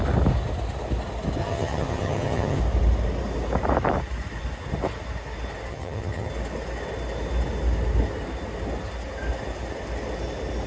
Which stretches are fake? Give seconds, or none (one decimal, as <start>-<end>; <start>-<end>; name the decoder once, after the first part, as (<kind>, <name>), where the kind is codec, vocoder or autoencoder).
1.4-2.6 (vocoder, HiFi-GAN); 5.7-6.3